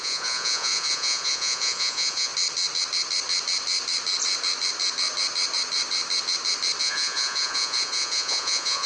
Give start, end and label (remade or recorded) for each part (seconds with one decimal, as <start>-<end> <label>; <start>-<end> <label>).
0.0-2.3 remade; 2.3-6.8 recorded; 6.8-8.9 remade